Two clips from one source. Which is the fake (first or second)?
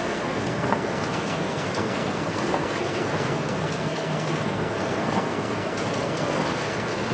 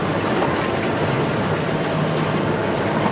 first